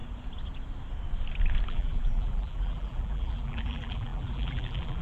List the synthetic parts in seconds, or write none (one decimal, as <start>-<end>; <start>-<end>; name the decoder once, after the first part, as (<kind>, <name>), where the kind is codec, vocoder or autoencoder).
1.7-5.0 (vocoder, BigVGAN v2)